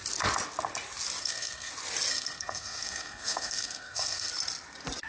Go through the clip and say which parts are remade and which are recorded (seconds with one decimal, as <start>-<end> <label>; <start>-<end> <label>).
0.0-1.2 recorded; 1.2-1.7 remade; 1.7-2.1 recorded; 2.1-4.3 remade; 4.3-5.1 recorded